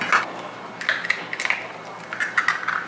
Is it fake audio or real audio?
real